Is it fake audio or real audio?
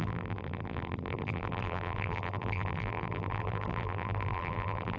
fake